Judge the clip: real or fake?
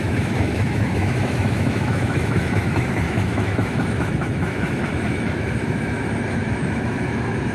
fake